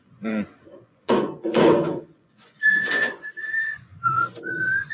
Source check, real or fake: fake